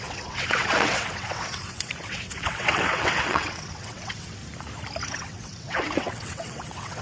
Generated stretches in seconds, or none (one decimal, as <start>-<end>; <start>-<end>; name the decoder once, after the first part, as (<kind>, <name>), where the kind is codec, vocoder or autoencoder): 0.0-4.4 (vocoder, WaveNeXt); 5.1-7.0